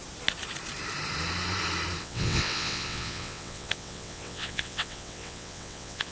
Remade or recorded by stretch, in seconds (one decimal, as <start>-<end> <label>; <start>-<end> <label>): 0.0-2.0 recorded; 2.0-6.1 remade